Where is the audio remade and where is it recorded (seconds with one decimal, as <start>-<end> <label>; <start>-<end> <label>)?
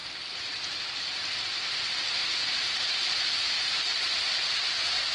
0.0-2.2 recorded; 2.2-5.1 remade